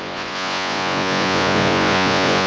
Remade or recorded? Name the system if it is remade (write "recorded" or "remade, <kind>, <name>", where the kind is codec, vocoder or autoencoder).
remade, vocoder, Vocos